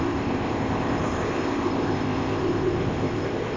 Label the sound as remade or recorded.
remade